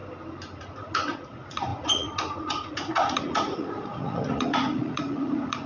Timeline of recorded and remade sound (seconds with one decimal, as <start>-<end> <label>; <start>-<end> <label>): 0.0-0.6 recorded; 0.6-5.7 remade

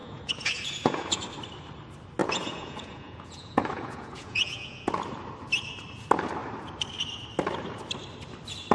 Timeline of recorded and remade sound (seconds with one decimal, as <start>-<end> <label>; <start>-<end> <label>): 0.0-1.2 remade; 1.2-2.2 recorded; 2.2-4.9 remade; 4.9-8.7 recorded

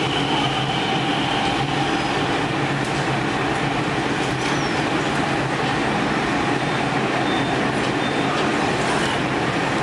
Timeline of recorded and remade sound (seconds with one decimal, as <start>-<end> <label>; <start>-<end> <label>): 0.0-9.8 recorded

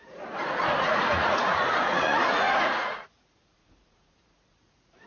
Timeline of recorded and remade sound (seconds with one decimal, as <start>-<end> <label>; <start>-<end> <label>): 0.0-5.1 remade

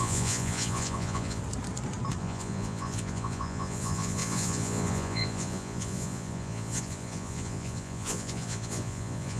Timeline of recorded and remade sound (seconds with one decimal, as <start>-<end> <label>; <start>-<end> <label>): 0.0-1.4 remade; 1.4-2.2 recorded; 2.2-9.4 remade